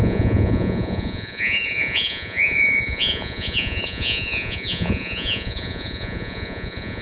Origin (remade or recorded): remade